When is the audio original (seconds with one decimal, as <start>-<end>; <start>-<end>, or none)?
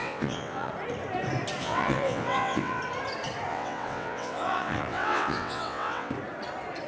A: 0.7-1.6; 2.8-3.5; 6.1-6.9